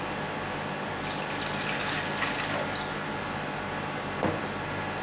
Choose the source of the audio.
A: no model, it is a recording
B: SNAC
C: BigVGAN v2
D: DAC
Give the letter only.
A